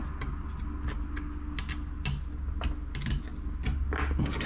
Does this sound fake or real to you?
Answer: real